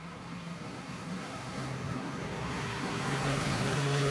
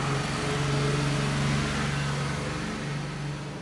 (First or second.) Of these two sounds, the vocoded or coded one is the first